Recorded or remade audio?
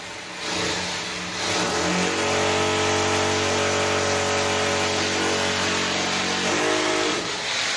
recorded